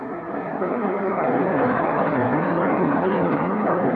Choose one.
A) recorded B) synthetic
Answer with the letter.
B